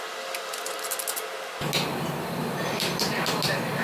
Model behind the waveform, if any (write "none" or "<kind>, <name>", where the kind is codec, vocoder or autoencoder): none